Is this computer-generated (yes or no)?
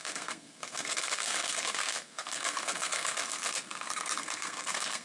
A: yes